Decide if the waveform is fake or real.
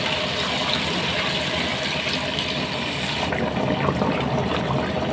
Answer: fake